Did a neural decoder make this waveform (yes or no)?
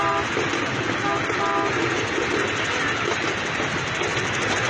no